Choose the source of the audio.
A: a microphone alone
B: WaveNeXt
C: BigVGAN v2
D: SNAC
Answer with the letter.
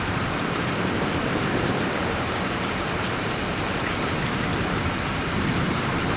C